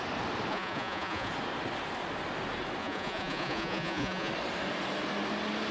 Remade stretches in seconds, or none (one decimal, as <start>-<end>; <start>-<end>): 0.5-1.3; 2.8-4.3